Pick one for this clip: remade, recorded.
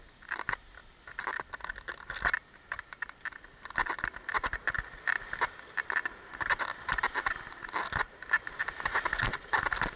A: recorded